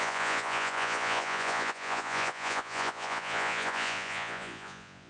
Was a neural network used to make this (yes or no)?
yes